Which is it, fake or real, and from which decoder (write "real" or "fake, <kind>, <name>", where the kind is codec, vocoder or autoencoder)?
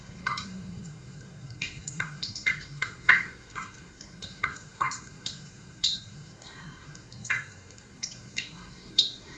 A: fake, codec, SNAC